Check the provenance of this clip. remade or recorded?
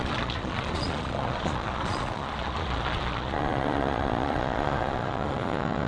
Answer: remade